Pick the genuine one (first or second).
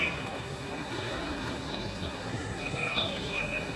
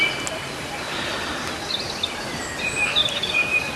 second